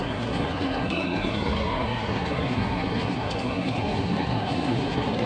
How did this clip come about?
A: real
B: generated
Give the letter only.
B